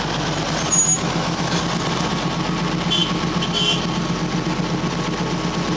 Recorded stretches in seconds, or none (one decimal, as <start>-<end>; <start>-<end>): 0.0-0.9; 1.6-5.8